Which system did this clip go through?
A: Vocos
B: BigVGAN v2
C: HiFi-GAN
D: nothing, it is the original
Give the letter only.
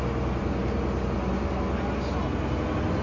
D